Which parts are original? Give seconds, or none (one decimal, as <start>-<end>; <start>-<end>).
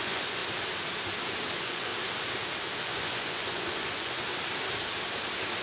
0.4-1.5; 1.9-2.8; 4.3-5.6